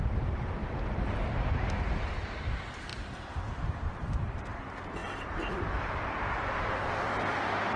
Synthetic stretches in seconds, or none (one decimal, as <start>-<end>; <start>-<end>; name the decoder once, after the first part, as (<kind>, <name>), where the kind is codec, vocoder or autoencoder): 0.0-0.6 (vocoder, BigVGAN v2); 1.3-7.8